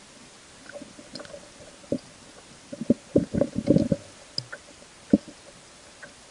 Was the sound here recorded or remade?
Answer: recorded